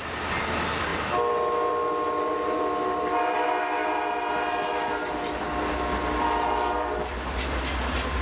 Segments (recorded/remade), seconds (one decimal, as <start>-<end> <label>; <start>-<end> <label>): 0.0-8.2 recorded